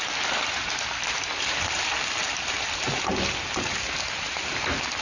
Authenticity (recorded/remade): recorded